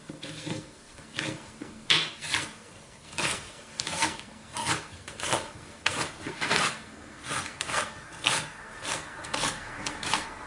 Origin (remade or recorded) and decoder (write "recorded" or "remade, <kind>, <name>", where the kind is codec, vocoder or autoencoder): remade, codec, SNAC